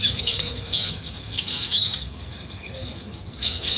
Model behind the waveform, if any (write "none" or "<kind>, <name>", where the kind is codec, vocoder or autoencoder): codec, SNAC